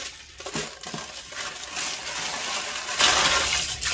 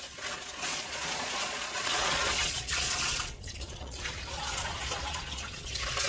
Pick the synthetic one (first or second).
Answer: second